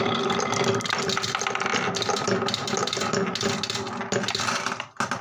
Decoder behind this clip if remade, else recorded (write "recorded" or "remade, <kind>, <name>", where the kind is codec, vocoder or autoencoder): recorded